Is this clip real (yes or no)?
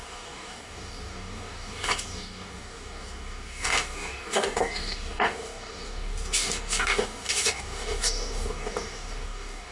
no